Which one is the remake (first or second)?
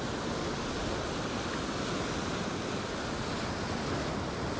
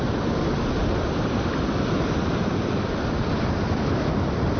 second